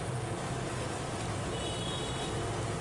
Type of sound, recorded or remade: recorded